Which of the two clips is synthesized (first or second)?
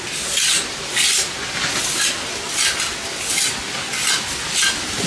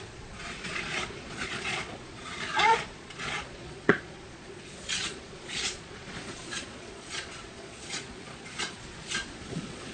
second